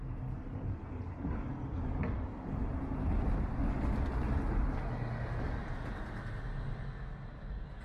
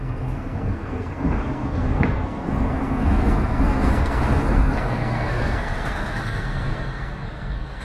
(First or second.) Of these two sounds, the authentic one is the first